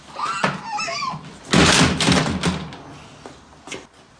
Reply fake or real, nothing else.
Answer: real